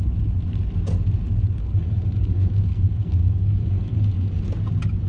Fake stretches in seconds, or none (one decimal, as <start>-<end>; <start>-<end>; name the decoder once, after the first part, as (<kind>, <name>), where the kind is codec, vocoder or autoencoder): 1.6-4.4 (codec, SNAC)